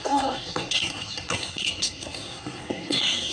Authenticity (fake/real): fake